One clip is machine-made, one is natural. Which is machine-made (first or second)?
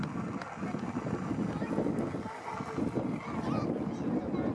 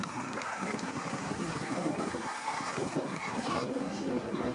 second